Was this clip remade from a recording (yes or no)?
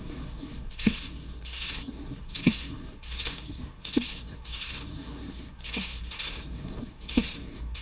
yes